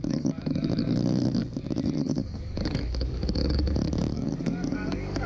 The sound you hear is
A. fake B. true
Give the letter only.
A